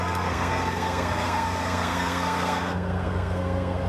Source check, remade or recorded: remade